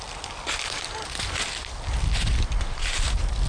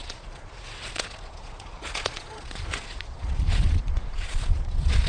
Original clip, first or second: first